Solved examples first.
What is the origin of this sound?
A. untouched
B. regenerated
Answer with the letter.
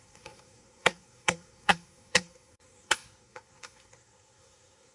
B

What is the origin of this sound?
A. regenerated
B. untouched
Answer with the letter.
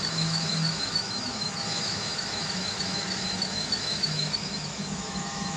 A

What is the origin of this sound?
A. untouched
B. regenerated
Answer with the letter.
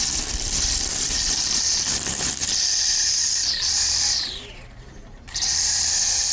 B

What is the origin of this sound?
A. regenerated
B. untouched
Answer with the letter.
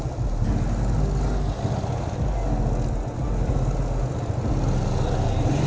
B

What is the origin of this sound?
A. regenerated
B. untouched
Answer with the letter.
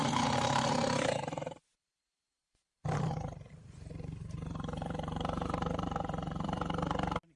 A